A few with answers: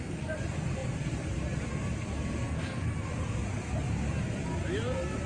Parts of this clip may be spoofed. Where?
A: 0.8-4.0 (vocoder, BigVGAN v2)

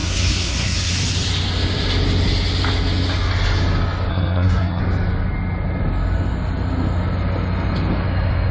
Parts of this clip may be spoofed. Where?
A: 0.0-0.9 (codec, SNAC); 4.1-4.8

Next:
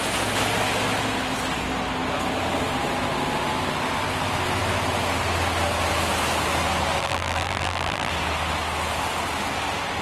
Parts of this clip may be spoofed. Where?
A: 7.0-8.1 (vocoder, BigVGAN v2)

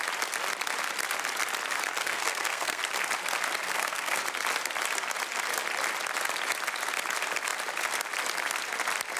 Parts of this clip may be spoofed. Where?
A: 2.0-2.8 (codec, SNAC); 3.7-4.2

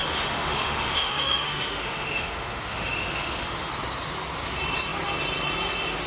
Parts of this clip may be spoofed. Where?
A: 0.0-3.7 (autoencoder, DAC-VAE)

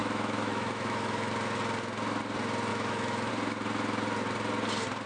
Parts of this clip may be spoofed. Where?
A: 0.0-1.3 (autoencoder, DAC-VAE); 2.7-3.3

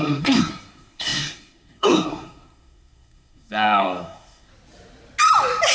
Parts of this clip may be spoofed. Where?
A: 0.0-4.5 (codec, SNAC)